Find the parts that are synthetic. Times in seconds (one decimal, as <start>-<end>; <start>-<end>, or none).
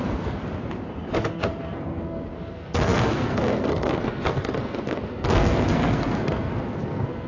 0.0-0.4; 1.3-7.3